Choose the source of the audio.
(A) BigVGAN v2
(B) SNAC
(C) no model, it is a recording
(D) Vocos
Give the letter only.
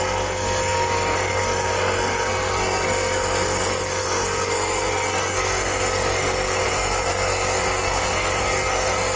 B